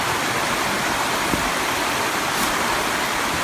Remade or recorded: recorded